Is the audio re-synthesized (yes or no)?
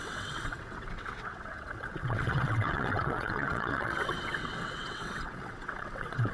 yes